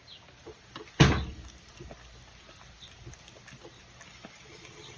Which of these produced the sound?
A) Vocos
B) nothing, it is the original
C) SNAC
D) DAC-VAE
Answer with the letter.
B